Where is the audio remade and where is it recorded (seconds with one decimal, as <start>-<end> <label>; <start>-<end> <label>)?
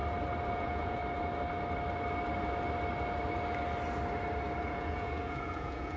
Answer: 0.0-0.5 recorded; 0.5-1.0 remade; 1.0-4.6 recorded; 4.6-6.0 remade